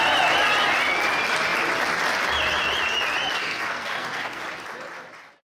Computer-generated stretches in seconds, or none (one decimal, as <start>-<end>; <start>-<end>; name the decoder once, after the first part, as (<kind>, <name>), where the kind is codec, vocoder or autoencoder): 3.4-4.4 (codec, SNAC)